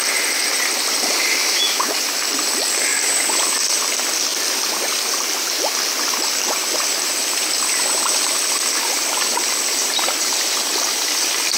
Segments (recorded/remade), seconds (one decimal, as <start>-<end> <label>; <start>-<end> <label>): 0.0-1.4 recorded; 1.4-1.9 remade; 1.9-11.6 recorded